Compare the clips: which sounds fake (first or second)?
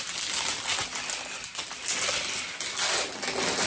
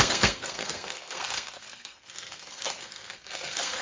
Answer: second